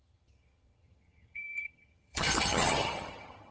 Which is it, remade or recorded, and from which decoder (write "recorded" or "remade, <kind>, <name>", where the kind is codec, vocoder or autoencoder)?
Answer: remade, vocoder, HiFi-GAN